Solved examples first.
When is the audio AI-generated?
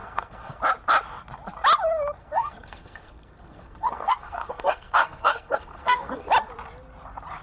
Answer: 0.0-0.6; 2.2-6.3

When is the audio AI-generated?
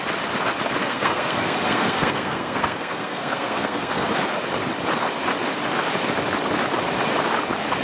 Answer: 0.8-4.1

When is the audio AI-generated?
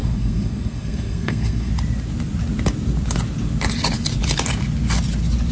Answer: 0.0-1.7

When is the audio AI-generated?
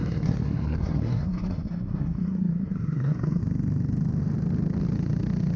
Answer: 0.0-3.4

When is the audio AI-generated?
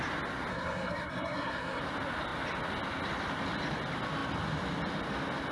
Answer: 0.5-1.8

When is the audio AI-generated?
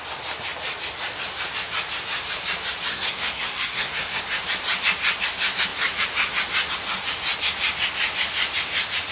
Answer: 2.9-4.2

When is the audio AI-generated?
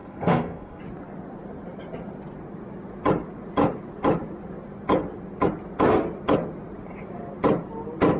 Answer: 0.0-0.8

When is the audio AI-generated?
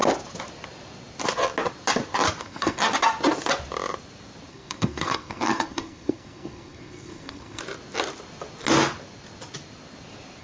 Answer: 2.4-2.8; 4.5-7.6